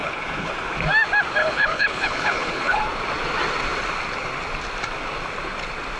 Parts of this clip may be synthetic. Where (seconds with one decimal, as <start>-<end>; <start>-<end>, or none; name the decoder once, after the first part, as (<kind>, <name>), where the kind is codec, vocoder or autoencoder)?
0.0-0.5 (codec, HILCodec); 1.4-2.8

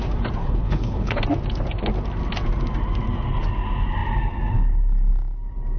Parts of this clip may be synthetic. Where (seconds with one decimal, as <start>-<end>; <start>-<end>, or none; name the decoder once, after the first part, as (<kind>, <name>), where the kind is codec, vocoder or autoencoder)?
0.4-1.2 (codec, HILCodec)

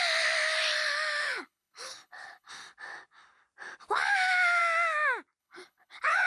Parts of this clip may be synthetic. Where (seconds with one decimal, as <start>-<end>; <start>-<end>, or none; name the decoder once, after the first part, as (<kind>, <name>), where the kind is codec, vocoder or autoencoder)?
1.2-2.5 (codec, HILCodec); 5.4-6.3

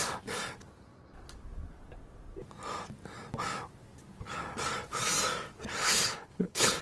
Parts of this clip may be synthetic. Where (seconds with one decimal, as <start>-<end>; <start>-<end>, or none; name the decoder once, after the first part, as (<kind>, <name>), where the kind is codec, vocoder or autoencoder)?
5.8-6.8 (codec, HILCodec)